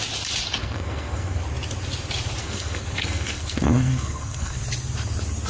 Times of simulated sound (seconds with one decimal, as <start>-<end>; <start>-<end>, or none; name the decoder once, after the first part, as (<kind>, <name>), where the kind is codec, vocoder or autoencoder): 0.6-1.4 (codec, SNAC); 2.4-4.6